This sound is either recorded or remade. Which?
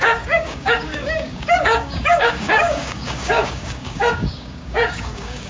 remade